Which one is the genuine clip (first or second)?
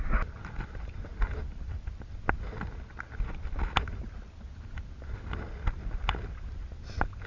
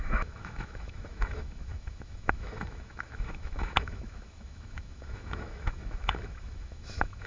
first